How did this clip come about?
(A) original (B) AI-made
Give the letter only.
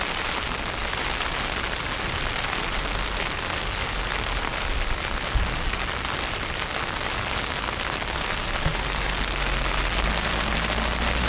A